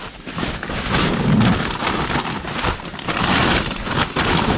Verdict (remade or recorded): recorded